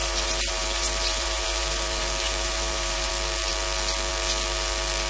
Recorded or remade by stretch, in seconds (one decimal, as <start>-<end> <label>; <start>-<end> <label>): 0.0-3.1 remade; 3.1-5.1 recorded